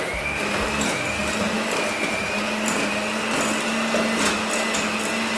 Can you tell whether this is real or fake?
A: real